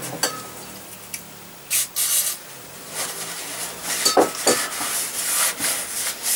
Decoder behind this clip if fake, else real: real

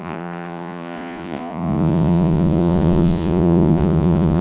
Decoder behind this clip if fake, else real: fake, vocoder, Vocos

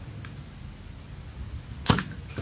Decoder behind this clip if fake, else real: real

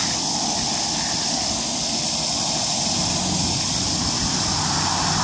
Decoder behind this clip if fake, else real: real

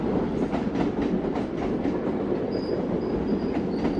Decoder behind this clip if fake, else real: real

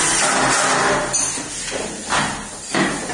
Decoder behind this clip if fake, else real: real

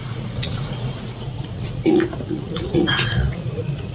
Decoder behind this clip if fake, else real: fake, vocoder, Vocos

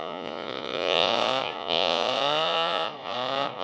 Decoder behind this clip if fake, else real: fake, vocoder, Vocos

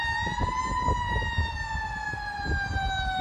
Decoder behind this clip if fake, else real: real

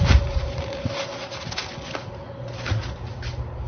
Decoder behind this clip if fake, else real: real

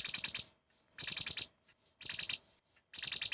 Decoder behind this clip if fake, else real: real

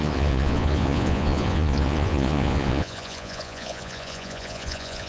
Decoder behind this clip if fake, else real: fake, vocoder, Vocos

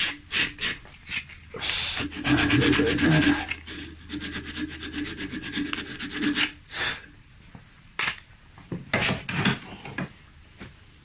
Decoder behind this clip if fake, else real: real